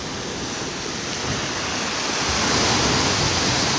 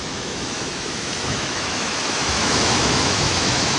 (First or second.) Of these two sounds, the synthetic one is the second